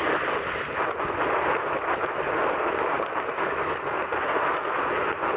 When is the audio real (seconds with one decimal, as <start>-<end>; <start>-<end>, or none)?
0.0-3.3; 3.9-5.4